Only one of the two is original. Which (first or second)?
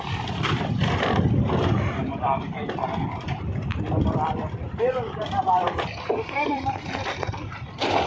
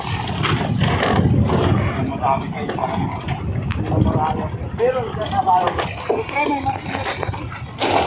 second